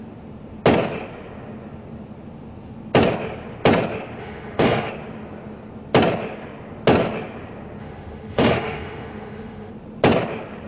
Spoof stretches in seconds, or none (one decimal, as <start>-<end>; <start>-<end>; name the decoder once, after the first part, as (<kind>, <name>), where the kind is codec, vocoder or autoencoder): 4.2-4.9 (autoencoder, DAC-VAE); 7.8-9.7